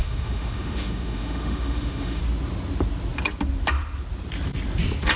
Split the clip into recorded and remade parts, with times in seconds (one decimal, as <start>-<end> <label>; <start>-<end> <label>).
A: 0.0-2.2 remade; 2.2-5.2 recorded